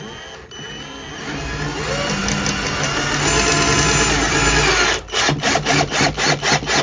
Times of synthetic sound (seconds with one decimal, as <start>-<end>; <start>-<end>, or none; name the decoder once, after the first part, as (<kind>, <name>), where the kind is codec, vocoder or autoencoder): none